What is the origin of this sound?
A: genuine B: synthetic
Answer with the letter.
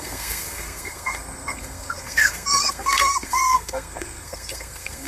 B